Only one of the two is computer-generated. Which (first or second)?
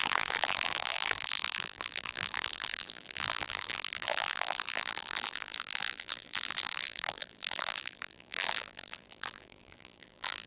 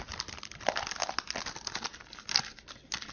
first